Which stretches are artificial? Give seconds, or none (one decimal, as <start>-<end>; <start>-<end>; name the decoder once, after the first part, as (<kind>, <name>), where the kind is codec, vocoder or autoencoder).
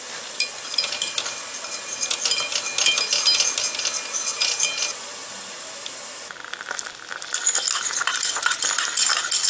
none